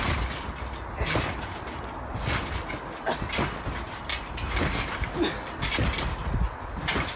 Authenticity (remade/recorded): recorded